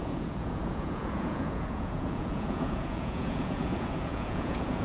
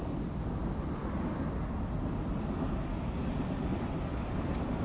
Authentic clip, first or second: second